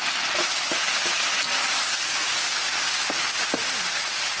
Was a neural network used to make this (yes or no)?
no